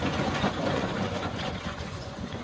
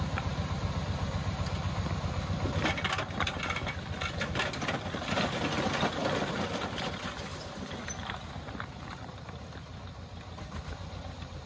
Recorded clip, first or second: second